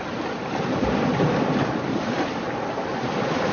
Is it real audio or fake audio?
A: fake